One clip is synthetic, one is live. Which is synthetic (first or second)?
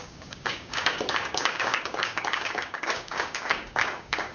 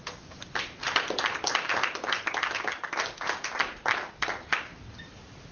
first